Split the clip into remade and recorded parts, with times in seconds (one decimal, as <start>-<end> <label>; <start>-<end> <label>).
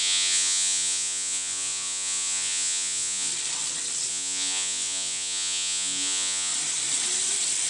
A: 0.0-3.3 remade; 3.3-4.1 recorded; 4.1-6.5 remade; 6.5-7.7 recorded